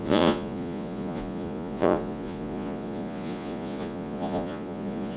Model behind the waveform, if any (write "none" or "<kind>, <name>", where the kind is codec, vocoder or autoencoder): vocoder, Vocos